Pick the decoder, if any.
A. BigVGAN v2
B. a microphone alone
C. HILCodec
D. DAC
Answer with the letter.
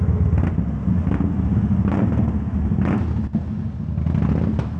B